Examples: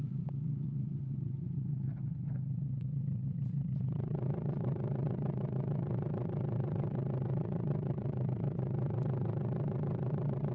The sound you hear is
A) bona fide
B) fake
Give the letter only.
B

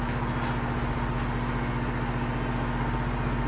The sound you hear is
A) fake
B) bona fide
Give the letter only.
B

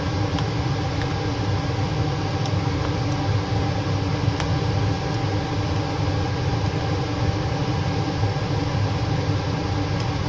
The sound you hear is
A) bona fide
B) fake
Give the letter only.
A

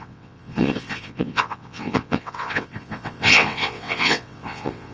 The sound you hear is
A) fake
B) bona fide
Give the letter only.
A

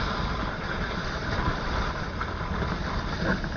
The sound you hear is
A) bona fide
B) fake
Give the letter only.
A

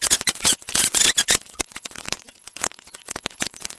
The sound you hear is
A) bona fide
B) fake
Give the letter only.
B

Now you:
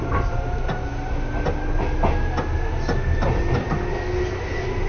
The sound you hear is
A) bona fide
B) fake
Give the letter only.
A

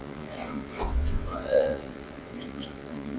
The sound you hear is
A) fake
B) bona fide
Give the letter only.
A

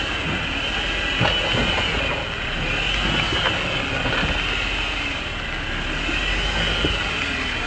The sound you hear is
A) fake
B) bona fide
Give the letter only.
B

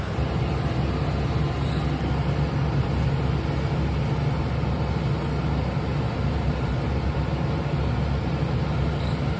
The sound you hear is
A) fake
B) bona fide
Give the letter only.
B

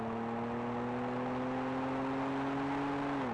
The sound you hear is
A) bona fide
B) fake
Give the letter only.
A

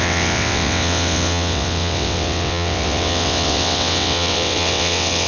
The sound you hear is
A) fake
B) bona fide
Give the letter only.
A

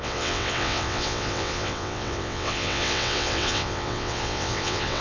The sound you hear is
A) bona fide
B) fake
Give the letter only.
B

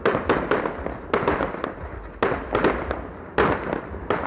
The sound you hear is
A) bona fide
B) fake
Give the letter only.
A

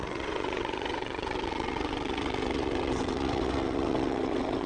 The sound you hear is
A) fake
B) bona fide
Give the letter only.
A